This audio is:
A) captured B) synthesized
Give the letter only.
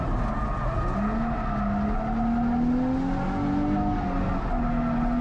A